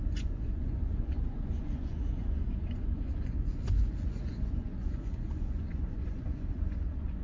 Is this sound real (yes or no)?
no